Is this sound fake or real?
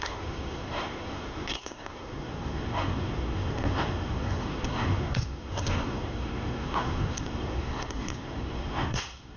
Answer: fake